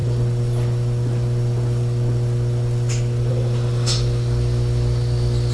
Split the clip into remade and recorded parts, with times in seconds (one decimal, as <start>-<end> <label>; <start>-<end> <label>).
0.0-5.5 recorded